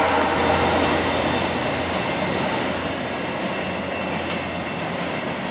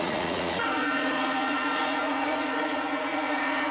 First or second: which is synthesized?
second